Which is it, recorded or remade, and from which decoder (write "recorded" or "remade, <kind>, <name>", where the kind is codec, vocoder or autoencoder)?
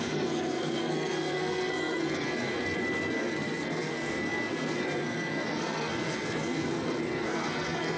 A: remade, codec, SNAC